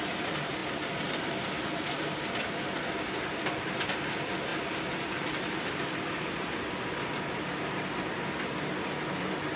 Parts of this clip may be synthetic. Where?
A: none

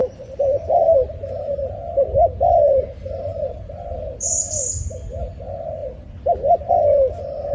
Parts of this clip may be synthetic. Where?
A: 0.0-2.0 (vocoder, BigVGAN v2); 3.3-3.9